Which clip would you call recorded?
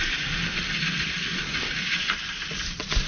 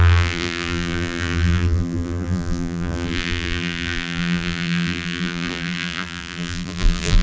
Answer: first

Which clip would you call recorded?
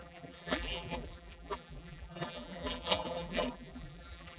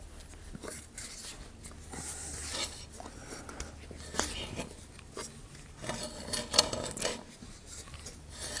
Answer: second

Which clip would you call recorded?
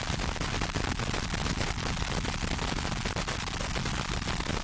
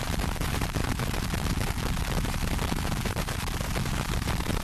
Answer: first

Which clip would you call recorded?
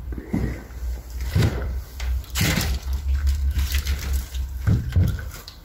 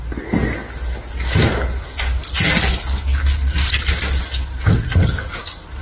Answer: second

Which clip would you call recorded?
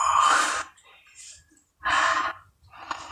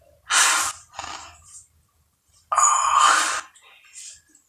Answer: second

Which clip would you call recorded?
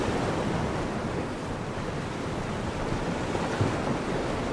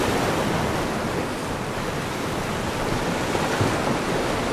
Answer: second